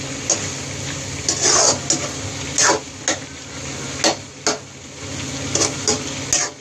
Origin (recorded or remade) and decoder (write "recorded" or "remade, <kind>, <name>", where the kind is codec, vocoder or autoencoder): recorded